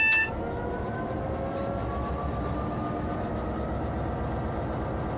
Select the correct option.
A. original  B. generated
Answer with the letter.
A